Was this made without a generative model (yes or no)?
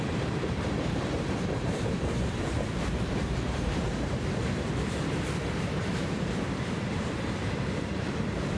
no